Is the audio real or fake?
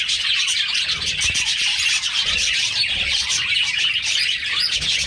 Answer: real